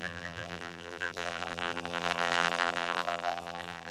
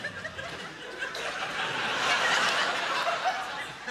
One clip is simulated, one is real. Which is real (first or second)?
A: second